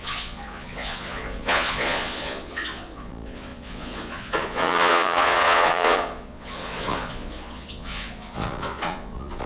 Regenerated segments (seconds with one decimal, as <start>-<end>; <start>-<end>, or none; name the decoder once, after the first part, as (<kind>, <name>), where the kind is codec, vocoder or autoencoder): 0.0-9.5 (vocoder, Vocos)

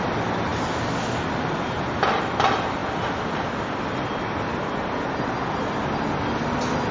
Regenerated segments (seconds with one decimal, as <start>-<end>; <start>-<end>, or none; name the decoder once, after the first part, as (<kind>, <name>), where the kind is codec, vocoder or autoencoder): none

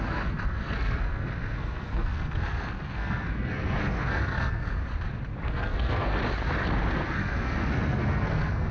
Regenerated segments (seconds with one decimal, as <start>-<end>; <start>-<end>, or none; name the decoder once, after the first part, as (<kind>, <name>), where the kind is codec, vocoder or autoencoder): 0.0-4.8 (codec, SNAC); 5.4-6.2; 6.9-8.7

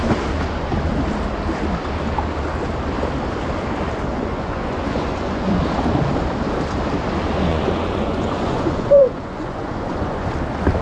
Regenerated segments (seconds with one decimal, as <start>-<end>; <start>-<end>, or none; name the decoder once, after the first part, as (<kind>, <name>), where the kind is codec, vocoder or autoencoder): 4.1-5.6 (vocoder, Vocos); 7.5-10.3

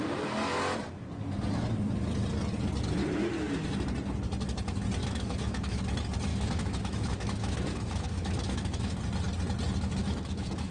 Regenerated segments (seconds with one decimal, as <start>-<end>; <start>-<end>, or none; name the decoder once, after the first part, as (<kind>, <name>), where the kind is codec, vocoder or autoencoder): 5.0-5.8 (autoencoder, DAC-VAE); 6.3-9.0; 10.0-10.7

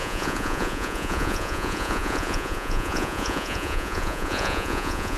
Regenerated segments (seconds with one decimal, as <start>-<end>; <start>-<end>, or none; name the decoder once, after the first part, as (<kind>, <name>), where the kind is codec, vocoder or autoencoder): 0.0-5.2 (vocoder, Vocos)

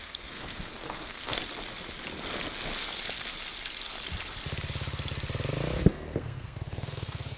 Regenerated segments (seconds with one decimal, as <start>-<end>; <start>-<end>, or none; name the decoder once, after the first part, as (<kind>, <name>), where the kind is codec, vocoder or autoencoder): 0.0-1.4 (codec, SNAC); 5.8-7.4

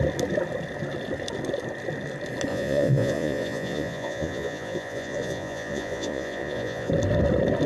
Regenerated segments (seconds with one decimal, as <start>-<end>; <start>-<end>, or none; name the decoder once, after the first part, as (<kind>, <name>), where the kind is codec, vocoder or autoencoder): 2.5-6.9 (vocoder, Vocos)